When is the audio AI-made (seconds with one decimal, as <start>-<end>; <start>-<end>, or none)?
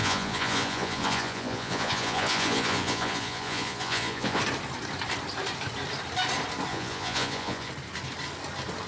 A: 0.0-4.4; 6.7-7.7